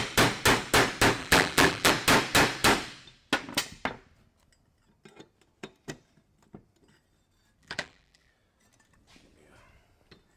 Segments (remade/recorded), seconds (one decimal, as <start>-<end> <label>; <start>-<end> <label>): 0.0-1.2 recorded; 1.2-1.9 remade; 1.9-7.6 recorded; 7.6-8.3 remade; 8.3-10.4 recorded